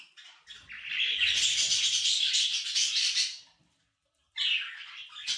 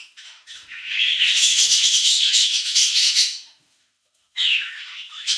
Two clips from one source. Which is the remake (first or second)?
second